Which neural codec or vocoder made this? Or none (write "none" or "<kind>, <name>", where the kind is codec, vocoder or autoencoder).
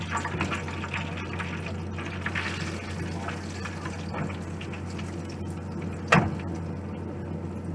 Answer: none